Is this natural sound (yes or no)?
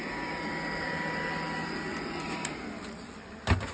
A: yes